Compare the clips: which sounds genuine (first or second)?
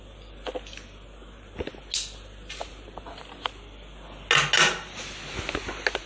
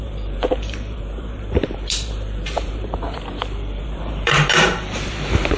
first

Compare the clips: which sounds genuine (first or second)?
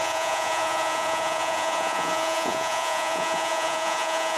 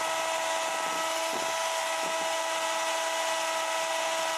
second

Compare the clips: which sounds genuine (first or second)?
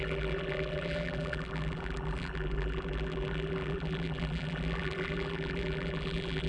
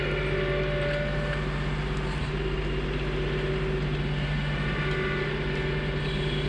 second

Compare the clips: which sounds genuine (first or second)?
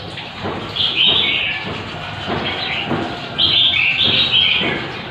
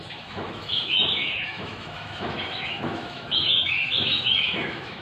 first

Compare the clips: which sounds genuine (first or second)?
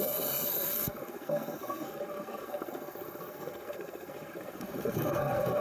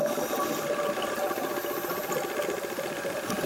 second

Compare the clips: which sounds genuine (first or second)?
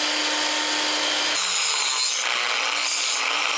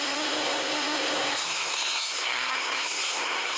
first